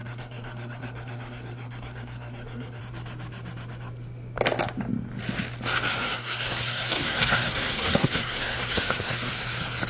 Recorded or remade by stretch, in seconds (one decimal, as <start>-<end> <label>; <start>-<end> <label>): 0.0-2.8 remade; 2.8-5.9 recorded; 5.9-9.3 remade; 9.3-9.9 recorded